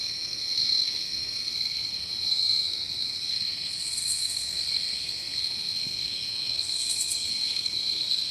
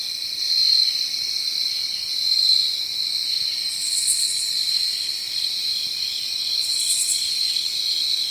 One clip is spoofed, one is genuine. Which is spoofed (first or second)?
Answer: first